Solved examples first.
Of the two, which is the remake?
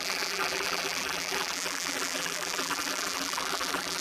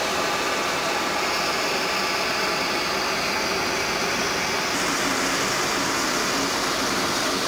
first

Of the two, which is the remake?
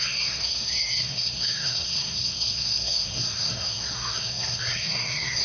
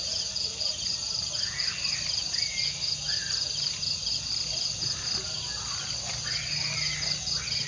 first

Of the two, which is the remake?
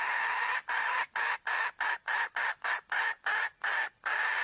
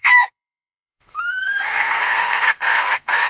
second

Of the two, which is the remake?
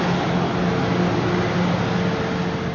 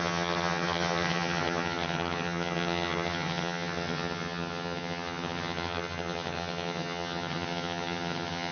second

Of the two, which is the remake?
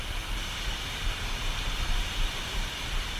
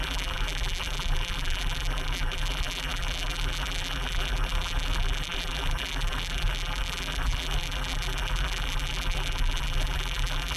second